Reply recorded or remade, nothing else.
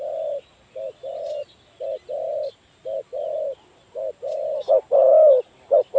recorded